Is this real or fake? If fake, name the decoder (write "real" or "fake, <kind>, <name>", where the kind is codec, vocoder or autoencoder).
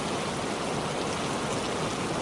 real